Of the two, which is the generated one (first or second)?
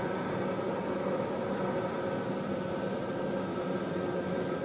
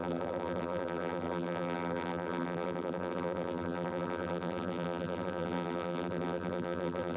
second